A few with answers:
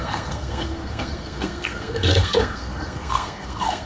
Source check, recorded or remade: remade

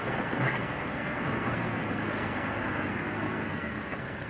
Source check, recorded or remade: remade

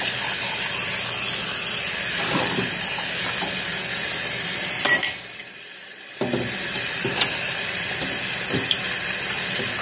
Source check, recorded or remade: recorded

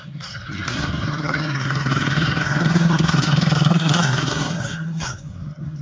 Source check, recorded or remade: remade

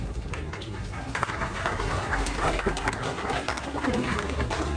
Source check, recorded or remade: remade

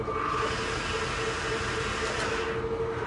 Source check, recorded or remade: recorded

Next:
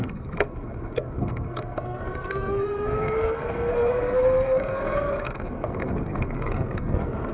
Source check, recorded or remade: remade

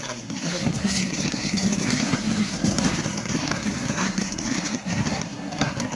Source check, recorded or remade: remade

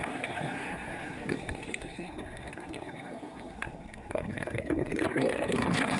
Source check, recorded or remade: remade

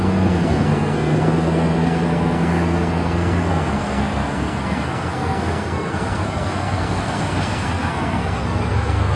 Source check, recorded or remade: remade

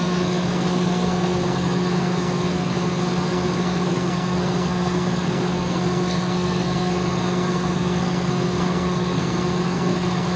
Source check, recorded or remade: remade